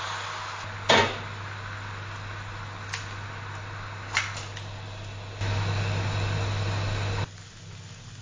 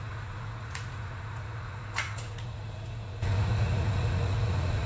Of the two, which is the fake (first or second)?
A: second